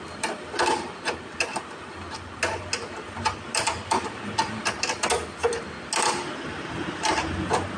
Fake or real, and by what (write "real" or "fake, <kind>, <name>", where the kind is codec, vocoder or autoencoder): real